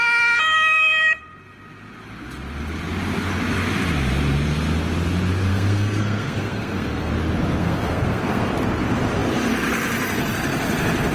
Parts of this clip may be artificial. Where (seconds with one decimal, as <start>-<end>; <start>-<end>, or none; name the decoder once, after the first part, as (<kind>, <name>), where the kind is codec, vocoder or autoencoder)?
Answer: 5.5-7.1 (codec, SNAC); 7.6-8.5